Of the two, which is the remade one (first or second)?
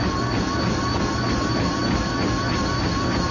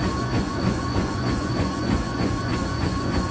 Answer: second